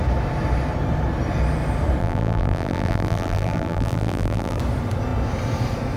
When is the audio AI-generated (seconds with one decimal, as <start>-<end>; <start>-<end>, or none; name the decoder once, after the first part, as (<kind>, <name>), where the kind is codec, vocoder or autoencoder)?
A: 2.0-4.6 (vocoder, BigVGAN v2)